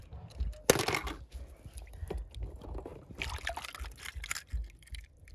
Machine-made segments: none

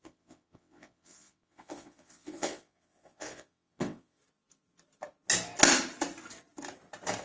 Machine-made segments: 0.0-4.2 (vocoder, WaveNeXt)